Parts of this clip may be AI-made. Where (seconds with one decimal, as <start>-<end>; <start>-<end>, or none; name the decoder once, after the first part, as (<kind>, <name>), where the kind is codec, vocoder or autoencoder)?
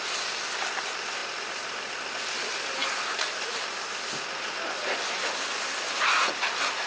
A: 1.2-1.9 (vocoder, BigVGAN v2)